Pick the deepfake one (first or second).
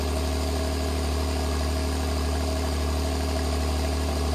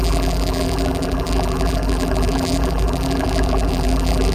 second